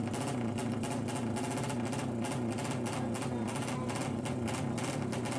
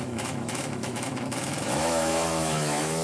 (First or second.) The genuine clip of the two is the first